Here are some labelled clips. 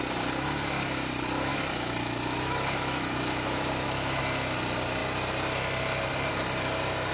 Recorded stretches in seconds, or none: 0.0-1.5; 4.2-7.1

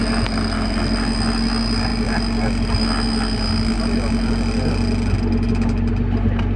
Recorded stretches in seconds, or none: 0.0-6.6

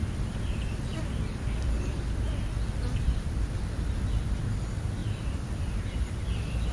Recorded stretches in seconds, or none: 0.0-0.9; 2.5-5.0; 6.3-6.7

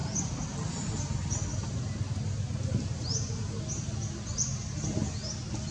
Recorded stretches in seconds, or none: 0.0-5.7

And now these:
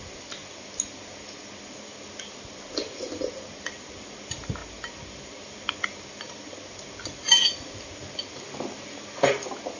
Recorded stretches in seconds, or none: 0.0-9.8

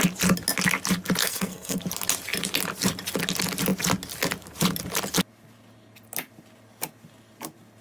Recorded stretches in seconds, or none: 0.0-1.2; 1.8-7.8